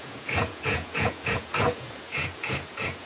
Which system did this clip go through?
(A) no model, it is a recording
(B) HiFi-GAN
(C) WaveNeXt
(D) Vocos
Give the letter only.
D